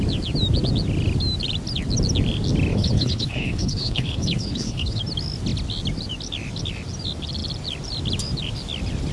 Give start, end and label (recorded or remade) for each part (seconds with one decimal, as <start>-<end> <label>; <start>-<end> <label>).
0.0-2.7 recorded; 2.7-5.0 remade; 5.0-9.1 recorded

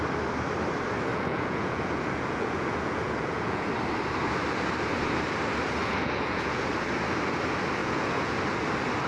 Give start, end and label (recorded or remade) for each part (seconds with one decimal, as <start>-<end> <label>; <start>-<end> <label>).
0.0-1.1 recorded; 1.1-3.7 remade; 3.7-5.8 recorded; 5.8-6.7 remade; 6.7-7.8 recorded; 7.8-8.4 remade; 8.4-9.1 recorded